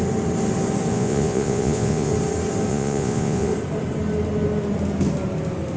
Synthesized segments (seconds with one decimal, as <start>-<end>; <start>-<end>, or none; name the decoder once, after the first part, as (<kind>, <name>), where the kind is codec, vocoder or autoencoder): 0.9-2.1 (vocoder, Vocos); 2.7-3.5